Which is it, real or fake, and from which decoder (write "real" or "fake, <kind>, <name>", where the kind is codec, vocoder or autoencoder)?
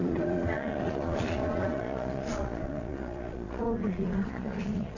fake, vocoder, Vocos